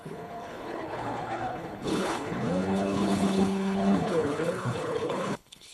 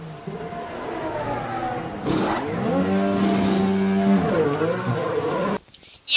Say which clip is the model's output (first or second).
first